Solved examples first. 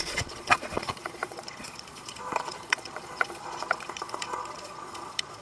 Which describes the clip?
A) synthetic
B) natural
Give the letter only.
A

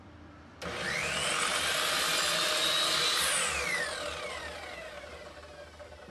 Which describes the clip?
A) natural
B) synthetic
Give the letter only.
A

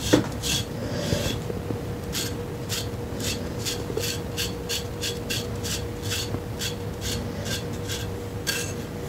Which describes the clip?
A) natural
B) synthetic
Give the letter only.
A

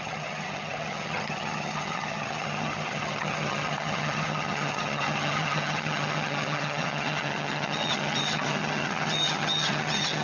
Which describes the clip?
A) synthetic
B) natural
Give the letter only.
A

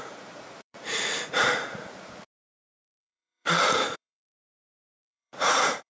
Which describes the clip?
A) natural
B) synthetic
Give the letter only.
B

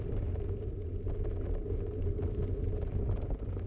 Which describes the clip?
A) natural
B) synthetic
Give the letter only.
A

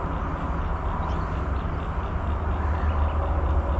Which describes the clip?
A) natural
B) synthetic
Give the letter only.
A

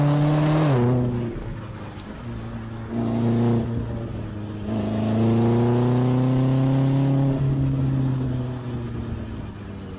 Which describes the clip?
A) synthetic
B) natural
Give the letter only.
B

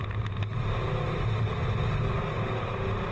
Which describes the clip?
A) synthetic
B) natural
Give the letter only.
B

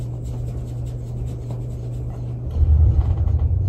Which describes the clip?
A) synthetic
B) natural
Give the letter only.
B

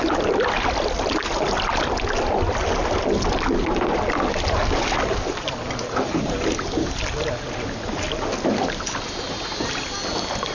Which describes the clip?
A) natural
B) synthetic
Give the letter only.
A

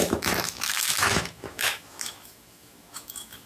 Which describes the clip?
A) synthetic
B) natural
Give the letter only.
A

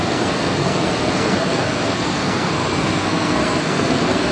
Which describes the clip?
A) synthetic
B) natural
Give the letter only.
A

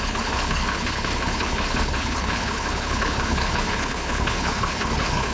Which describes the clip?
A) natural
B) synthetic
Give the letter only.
B